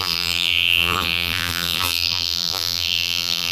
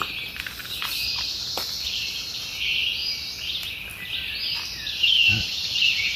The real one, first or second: second